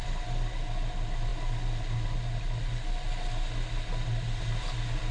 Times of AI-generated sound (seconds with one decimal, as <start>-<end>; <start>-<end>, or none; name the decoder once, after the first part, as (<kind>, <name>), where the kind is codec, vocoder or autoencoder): none